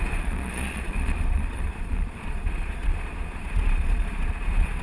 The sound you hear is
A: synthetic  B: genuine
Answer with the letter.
A